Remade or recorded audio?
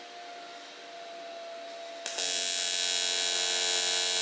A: recorded